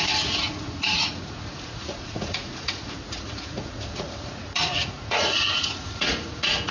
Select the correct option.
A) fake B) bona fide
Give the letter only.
A